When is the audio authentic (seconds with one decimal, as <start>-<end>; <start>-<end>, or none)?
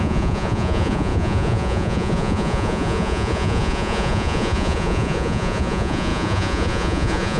none